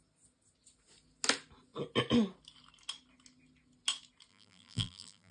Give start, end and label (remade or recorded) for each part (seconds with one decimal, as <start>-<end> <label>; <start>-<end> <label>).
0.0-4.3 recorded; 4.3-5.3 remade